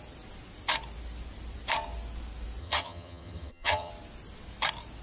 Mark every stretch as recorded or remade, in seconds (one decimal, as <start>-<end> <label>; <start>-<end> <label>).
0.0-2.6 recorded; 2.6-3.9 remade; 3.9-5.0 recorded